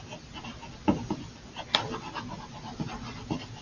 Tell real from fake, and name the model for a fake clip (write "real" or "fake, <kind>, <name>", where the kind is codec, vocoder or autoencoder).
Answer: real